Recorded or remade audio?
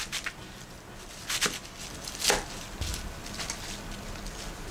recorded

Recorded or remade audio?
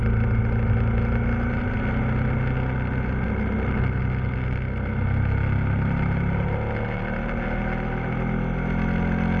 recorded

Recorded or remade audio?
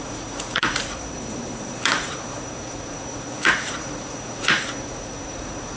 remade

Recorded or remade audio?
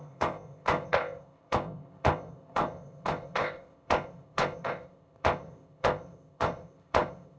remade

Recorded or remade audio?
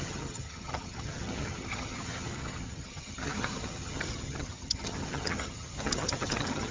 remade